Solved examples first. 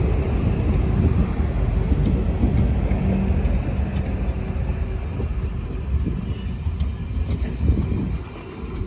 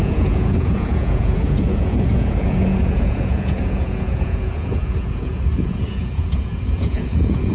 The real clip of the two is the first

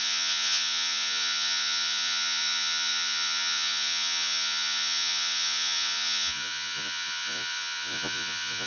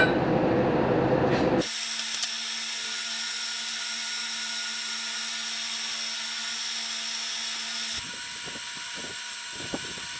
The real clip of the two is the second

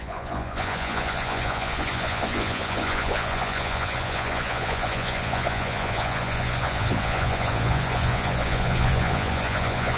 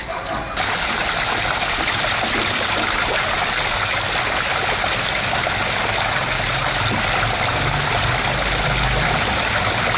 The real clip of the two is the second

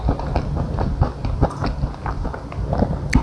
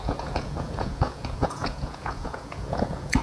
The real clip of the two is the first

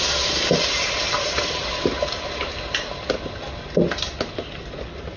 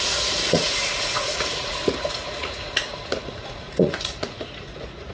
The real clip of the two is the first